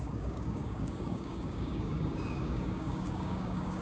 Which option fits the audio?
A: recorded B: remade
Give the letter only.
B